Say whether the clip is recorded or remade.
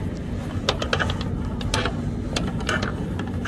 recorded